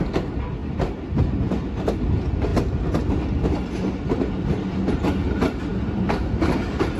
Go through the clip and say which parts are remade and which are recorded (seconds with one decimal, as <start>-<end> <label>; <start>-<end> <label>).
0.0-7.0 recorded